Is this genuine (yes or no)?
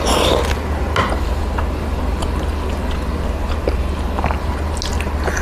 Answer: yes